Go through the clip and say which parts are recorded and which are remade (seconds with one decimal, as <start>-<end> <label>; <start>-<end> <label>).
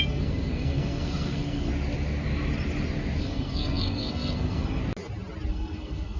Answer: 0.0-1.7 remade; 1.7-3.2 recorded; 3.2-4.8 remade; 4.8-5.5 recorded; 5.5-6.2 remade